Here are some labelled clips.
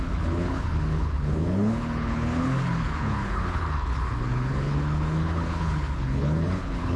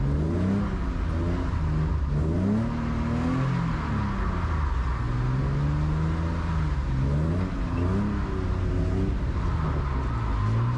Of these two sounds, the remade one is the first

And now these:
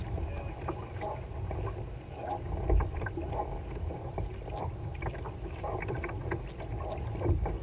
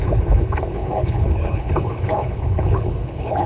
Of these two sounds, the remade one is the second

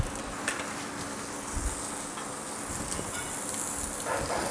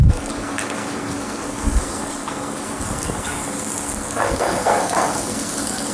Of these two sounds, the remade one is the second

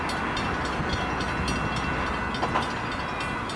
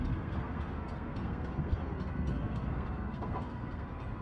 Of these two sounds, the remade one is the second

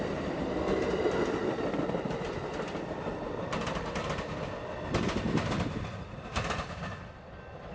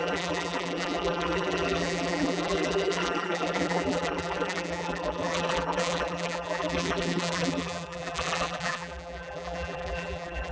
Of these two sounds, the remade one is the second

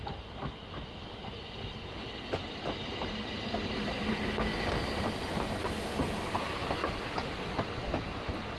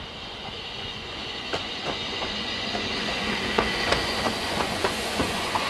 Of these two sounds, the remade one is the second